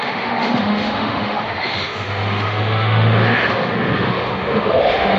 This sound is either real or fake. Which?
fake